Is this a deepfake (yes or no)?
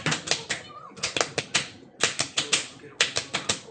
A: no